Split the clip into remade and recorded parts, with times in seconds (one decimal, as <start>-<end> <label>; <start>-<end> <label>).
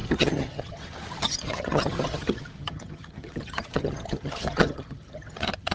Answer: 0.0-5.7 remade